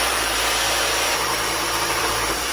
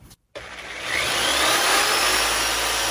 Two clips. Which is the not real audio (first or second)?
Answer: first